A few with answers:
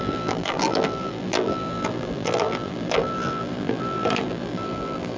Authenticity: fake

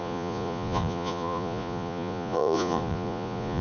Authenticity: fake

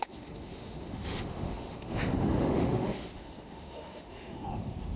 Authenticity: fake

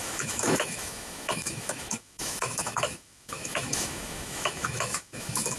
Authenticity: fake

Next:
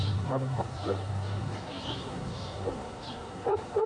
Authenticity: fake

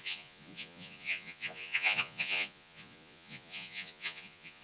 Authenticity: fake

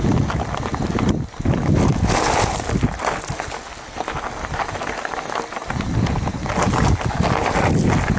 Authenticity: real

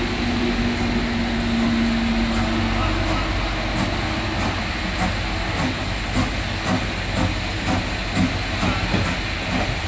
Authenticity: real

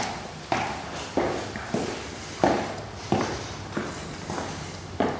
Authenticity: real